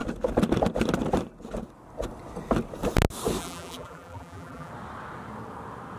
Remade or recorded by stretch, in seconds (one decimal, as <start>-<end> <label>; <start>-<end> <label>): 0.0-3.4 recorded; 3.4-4.7 remade; 4.7-6.0 recorded